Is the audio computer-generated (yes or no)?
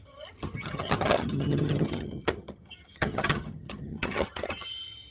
yes